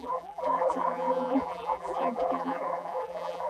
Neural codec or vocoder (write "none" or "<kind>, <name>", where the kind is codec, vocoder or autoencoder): vocoder, BigVGAN v2